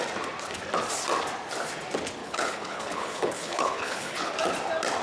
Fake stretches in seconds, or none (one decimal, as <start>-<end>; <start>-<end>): 2.2-4.3